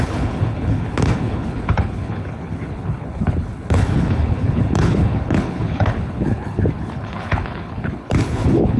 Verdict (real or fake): fake